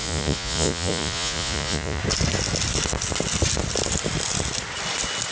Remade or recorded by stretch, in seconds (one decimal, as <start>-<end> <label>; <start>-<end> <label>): 0.0-2.0 remade; 2.0-5.3 recorded